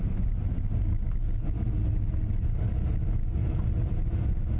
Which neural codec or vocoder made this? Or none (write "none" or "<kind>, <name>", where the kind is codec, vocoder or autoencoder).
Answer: none